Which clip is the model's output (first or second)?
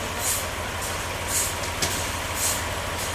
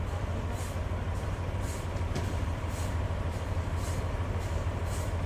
second